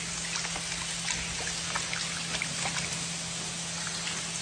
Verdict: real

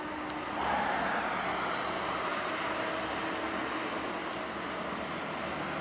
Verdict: real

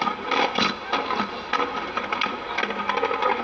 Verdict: real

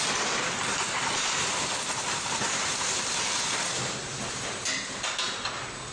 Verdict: real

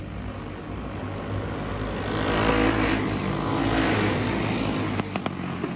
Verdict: real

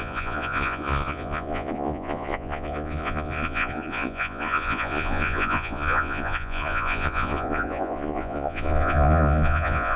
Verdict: fake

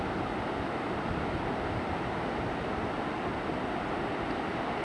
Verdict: real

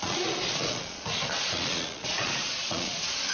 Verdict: fake